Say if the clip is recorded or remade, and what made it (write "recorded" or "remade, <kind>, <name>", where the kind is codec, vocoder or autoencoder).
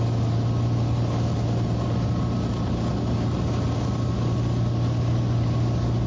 recorded